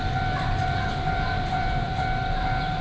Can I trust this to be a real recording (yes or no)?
no